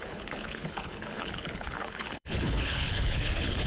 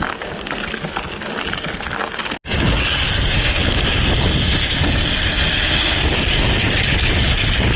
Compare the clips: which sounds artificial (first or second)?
first